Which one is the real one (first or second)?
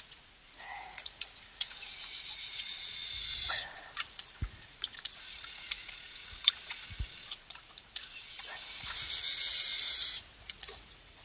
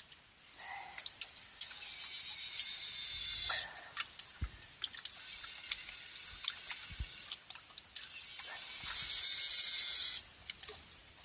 second